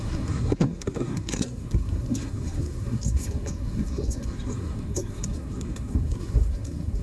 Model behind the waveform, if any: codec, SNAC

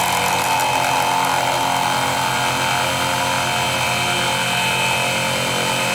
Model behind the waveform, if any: none